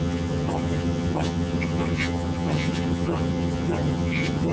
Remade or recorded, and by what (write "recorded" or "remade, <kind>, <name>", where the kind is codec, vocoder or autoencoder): remade, vocoder, HiFi-GAN